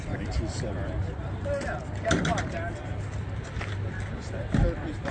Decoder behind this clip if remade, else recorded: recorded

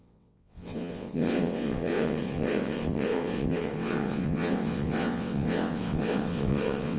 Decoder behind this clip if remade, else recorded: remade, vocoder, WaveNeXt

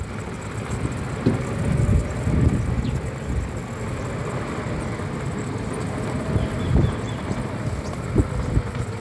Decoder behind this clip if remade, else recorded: recorded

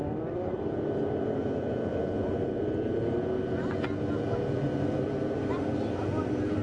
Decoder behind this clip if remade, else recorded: recorded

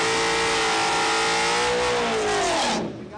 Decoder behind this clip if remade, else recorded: recorded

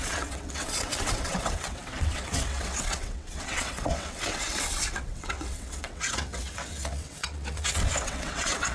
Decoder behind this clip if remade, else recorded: remade, vocoder, WaveNeXt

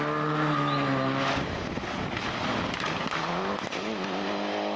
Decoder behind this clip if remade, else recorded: recorded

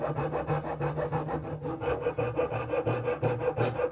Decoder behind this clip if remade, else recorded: recorded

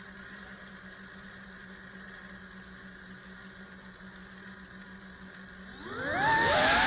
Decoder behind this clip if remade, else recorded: recorded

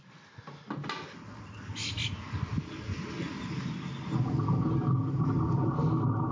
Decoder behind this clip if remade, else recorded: recorded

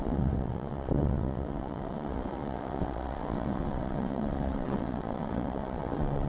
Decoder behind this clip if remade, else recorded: remade, vocoder, WaveNeXt